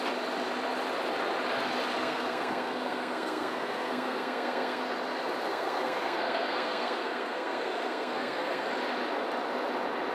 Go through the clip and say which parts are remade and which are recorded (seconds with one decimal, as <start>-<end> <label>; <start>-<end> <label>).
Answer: 0.0-2.0 recorded; 2.0-4.8 remade; 4.8-5.5 recorded; 5.5-8.7 remade; 8.7-10.1 recorded